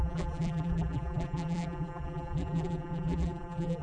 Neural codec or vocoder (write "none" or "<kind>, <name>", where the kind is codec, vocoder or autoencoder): vocoder, BigVGAN v2